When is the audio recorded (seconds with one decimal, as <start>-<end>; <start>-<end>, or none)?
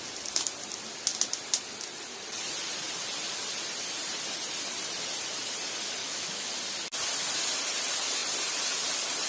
0.0-6.0; 6.5-9.3